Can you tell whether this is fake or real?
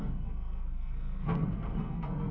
fake